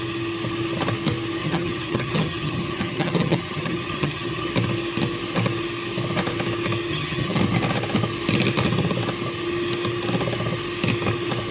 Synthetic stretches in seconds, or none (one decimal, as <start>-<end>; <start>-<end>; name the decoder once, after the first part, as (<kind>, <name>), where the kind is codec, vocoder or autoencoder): 1.4-4.5 (vocoder, HiFi-GAN); 6.9-7.4

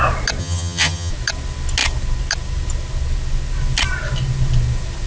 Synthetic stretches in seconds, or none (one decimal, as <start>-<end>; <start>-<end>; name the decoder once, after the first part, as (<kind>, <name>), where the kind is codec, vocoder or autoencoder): 0.4-1.1 (vocoder, HiFi-GAN)

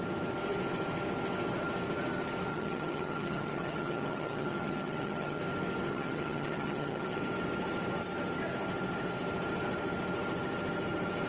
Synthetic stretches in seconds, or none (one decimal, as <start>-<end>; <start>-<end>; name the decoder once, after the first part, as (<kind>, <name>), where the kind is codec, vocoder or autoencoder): 2.5-5.4 (vocoder, HiFi-GAN); 5.9-7.2